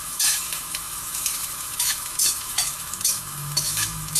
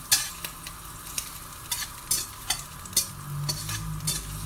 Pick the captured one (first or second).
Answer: second